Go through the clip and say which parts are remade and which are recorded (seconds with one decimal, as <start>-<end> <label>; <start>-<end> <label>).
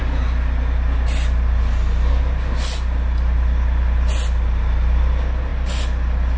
0.0-6.4 recorded